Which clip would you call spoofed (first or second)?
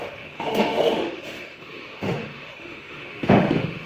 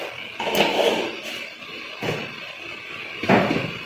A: first